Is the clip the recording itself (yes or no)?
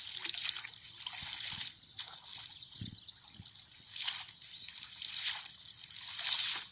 yes